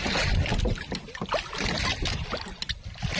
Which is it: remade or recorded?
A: recorded